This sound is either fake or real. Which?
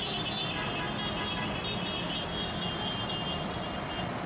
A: real